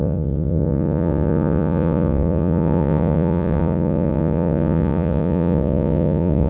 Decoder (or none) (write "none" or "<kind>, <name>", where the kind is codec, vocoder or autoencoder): vocoder, Vocos